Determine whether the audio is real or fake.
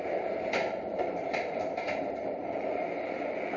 fake